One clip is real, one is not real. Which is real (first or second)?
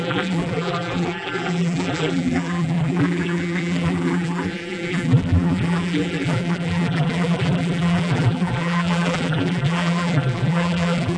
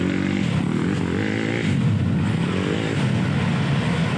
second